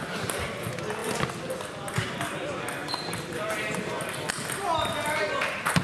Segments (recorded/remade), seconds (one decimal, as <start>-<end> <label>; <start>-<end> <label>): 0.0-5.8 recorded